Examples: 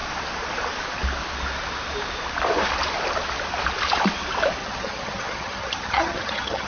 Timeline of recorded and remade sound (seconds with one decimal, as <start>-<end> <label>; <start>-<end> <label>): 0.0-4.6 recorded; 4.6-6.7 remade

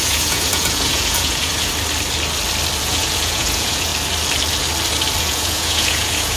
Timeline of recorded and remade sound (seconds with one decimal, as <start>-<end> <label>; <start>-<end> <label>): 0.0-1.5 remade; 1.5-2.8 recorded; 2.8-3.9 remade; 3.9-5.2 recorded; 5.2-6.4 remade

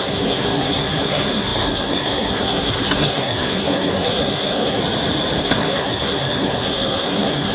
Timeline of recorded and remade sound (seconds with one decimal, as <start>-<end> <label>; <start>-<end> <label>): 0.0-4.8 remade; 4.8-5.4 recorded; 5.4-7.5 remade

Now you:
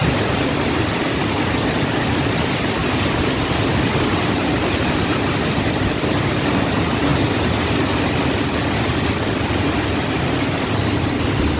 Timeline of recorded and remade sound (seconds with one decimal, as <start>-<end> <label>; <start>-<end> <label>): 0.0-2.8 recorded; 2.8-5.4 remade; 5.4-11.6 recorded

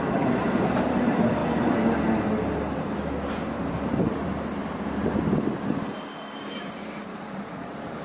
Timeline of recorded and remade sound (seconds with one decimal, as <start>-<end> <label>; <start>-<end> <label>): 0.0-1.4 remade; 1.4-3.7 recorded; 3.7-4.6 remade; 4.6-6.4 recorded; 6.4-8.0 remade

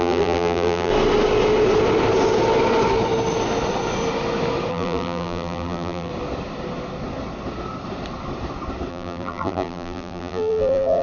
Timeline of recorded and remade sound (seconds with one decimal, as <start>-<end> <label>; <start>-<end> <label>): 0.0-0.9 remade; 0.9-4.7 recorded; 4.7-6.1 remade; 6.1-8.9 recorded; 8.9-11.0 remade

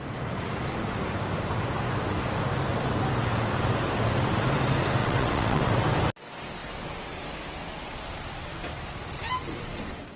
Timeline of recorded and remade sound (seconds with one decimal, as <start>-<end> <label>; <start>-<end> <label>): 0.0-5.0 recorded; 5.0-5.7 remade; 5.7-10.2 recorded

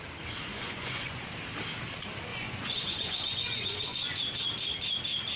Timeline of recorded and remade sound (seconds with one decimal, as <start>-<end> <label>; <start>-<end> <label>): 0.0-0.5 recorded; 0.5-1.2 remade; 1.2-2.3 recorded; 2.3-4.2 remade; 4.2-5.4 recorded